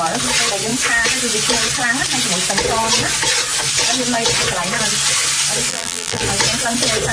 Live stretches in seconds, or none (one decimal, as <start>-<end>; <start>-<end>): 0.0-5.7; 6.2-7.1